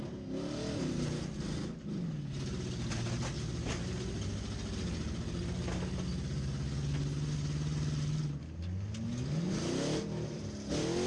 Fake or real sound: real